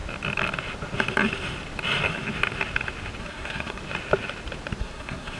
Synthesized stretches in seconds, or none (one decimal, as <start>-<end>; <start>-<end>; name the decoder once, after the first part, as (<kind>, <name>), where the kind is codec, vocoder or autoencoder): 3.2-3.8 (codec, SNAC); 4.8-5.4